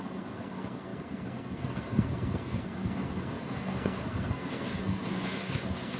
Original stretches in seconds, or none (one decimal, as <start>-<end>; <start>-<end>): none